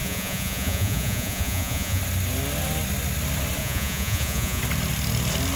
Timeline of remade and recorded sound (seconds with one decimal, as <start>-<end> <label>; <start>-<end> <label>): 0.0-2.0 remade; 2.0-3.6 recorded; 3.6-4.6 remade; 4.6-5.6 recorded